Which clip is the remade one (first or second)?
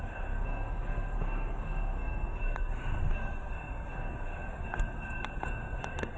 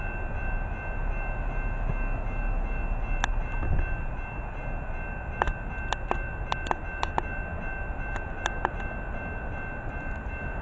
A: first